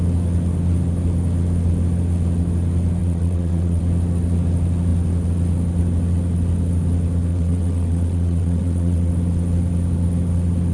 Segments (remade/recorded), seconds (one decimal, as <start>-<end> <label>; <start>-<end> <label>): 0.0-3.0 recorded; 3.0-3.8 remade; 3.8-7.3 recorded; 7.3-9.1 remade; 9.1-10.7 recorded